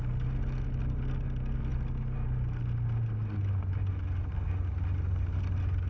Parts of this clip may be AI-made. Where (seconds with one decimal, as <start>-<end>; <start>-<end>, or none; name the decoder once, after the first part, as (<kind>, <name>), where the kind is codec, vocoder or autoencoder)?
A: none